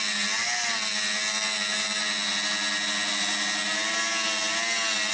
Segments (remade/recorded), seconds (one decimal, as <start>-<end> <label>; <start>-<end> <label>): 0.0-5.1 recorded